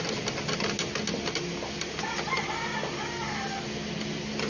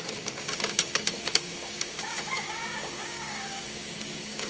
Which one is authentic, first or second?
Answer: first